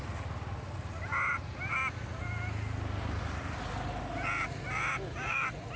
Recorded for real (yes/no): yes